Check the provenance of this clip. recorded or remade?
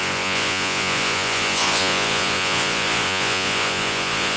remade